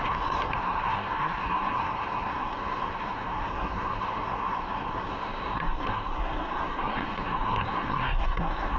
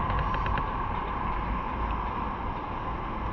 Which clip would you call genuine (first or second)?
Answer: second